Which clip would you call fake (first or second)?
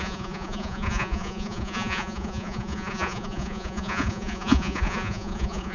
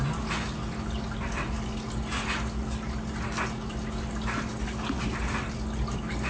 first